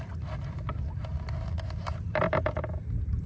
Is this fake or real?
real